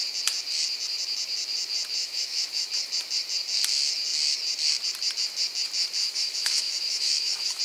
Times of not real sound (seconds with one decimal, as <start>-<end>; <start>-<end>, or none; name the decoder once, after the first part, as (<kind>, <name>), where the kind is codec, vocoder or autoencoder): 2.0-2.7 (autoencoder, DAC-VAE); 6.0-7.6